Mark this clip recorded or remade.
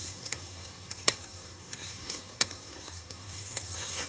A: remade